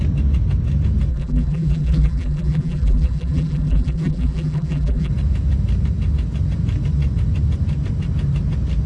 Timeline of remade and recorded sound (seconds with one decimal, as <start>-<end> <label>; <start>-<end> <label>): 0.0-1.1 recorded; 1.1-5.1 remade; 5.1-8.9 recorded